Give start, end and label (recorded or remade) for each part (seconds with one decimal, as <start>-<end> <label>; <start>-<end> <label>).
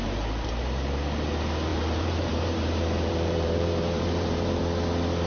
0.0-1.7 recorded; 1.7-4.6 remade; 4.6-5.3 recorded